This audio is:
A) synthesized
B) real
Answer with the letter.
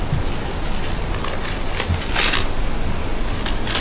B